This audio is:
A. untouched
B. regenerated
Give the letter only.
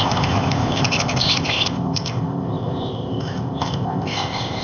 B